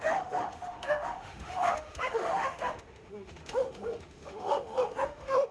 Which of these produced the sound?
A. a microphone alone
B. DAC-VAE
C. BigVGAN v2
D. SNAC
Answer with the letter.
B